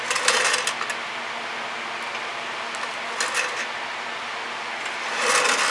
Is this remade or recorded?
recorded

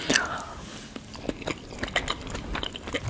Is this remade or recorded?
recorded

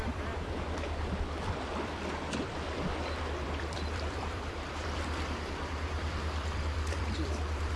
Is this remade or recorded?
remade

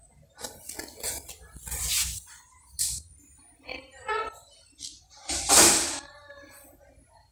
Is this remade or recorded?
recorded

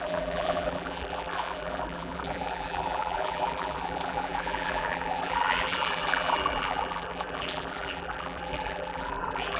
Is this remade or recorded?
remade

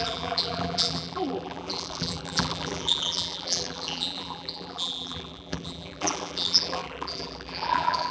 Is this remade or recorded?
remade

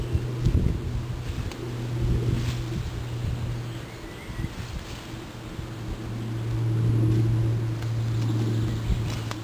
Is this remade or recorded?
recorded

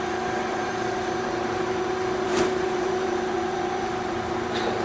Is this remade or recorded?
remade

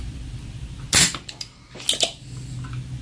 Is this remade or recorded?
recorded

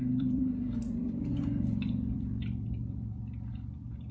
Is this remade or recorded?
remade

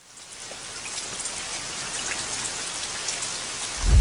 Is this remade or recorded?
recorded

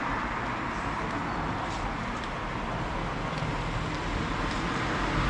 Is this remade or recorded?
recorded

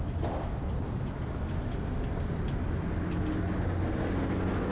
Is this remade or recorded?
recorded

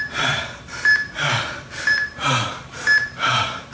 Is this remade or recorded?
remade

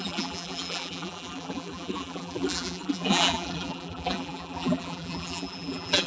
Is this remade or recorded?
remade